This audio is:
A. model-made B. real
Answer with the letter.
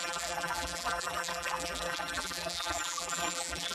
A